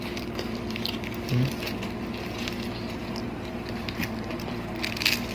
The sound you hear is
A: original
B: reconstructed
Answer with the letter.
A